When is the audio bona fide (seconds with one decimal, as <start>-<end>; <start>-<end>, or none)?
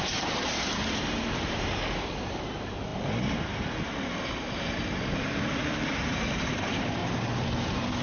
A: 7.0-7.6